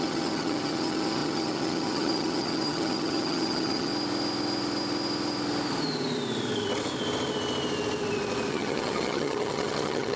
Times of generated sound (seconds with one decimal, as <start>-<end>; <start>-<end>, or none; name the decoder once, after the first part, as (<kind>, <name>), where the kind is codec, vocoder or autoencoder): 0.0-3.9 (vocoder, HiFi-GAN); 8.5-10.2